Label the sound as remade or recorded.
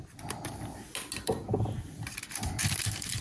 recorded